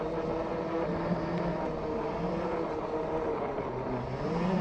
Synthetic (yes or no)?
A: no